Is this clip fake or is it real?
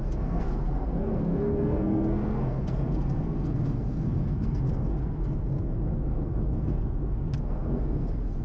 fake